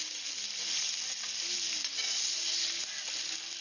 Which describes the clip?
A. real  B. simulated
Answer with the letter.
A